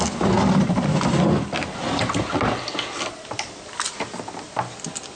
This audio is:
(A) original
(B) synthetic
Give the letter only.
A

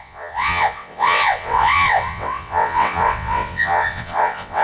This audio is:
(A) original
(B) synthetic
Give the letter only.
B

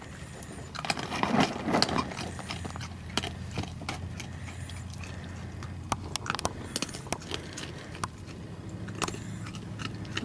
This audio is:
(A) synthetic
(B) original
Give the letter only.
B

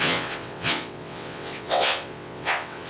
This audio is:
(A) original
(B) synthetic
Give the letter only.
B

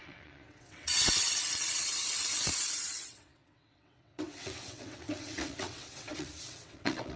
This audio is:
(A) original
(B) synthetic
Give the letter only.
B